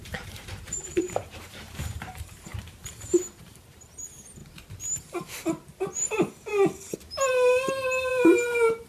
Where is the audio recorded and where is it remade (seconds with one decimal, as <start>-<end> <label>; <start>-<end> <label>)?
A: 0.0-4.4 remade; 4.4-5.0 recorded; 5.0-6.5 remade; 6.5-8.1 recorded; 8.1-8.9 remade